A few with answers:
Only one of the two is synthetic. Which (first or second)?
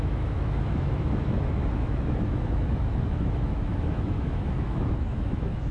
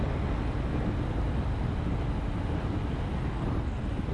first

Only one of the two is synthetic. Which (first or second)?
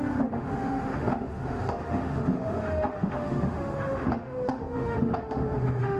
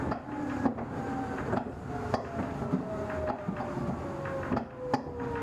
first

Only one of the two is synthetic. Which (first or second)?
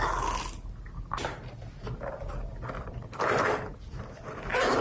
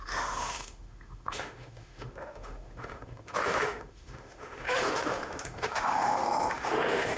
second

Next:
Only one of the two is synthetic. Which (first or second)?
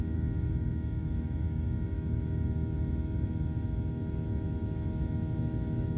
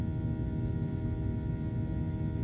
first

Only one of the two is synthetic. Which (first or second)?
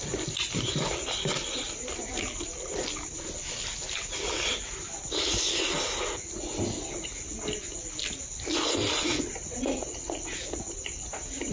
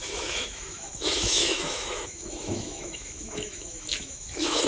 second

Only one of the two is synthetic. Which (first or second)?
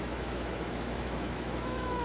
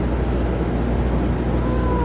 first